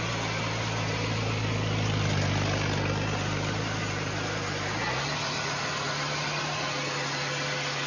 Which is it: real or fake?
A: real